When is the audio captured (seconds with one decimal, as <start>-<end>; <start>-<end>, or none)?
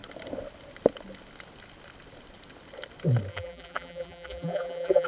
0.0-3.3